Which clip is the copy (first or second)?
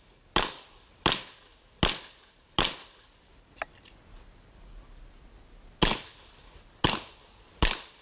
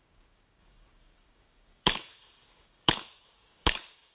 second